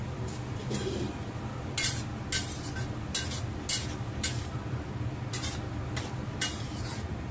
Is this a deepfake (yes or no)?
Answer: no